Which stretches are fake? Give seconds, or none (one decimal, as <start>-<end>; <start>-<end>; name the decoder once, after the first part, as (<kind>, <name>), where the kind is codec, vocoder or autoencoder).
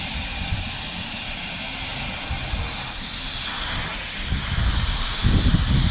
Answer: none